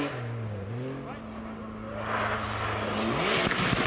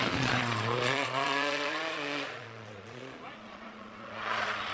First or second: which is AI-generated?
second